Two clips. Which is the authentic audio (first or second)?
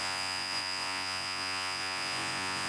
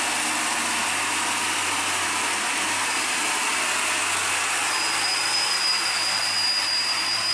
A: second